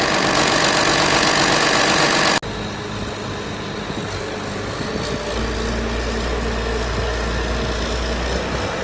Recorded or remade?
recorded